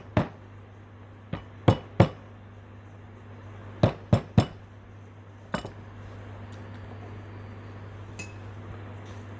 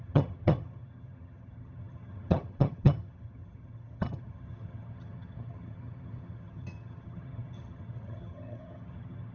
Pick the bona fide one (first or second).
first